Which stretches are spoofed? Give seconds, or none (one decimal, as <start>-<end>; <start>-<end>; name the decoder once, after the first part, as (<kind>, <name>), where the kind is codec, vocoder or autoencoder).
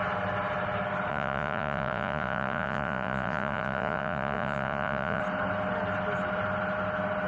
1.1-5.2 (vocoder, Vocos)